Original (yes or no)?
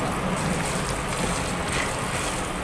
yes